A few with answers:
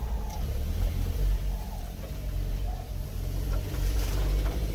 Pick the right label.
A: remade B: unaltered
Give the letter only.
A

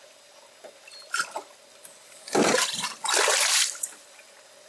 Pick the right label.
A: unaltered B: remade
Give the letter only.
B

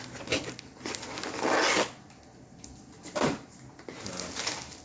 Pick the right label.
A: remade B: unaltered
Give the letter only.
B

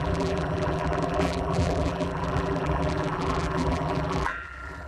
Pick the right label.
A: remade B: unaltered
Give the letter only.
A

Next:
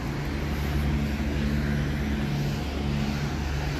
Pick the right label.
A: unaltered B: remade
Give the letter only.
A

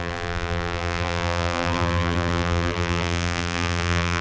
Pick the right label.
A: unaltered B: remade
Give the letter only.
B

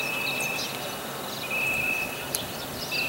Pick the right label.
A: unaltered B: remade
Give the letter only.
A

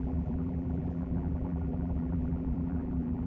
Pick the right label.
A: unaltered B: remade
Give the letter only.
B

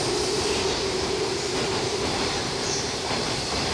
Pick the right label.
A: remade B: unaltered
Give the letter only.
A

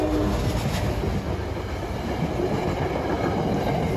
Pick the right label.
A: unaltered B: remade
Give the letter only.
A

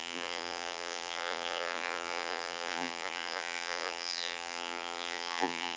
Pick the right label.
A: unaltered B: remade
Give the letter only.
B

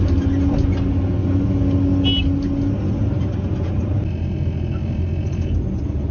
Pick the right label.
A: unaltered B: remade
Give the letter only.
A